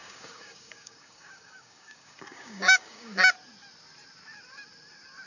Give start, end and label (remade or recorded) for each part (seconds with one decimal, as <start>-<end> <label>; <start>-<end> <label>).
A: 0.0-3.2 remade; 3.2-5.3 recorded